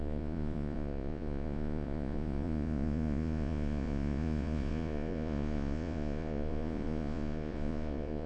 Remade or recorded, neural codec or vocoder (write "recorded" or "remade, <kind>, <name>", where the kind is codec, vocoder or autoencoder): remade, vocoder, Vocos